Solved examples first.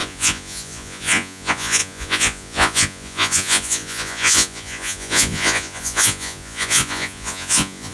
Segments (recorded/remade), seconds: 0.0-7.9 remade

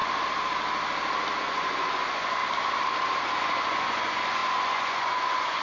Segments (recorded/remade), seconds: 0.0-1.4 recorded; 1.4-2.4 remade; 2.4-3.4 recorded; 3.4-5.6 remade